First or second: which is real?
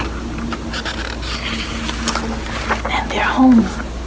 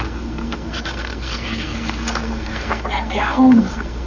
first